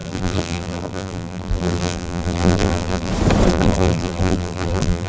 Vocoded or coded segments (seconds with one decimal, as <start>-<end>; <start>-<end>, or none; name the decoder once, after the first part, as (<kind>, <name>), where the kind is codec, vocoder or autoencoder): 0.0-3.1 (vocoder, BigVGAN v2); 3.5-5.1